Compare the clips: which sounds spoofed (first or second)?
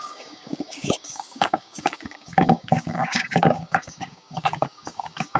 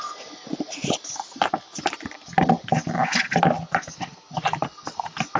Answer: first